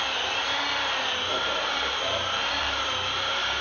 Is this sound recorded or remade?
remade